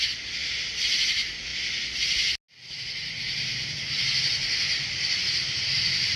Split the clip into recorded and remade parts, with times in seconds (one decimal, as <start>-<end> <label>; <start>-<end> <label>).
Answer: 0.0-6.2 recorded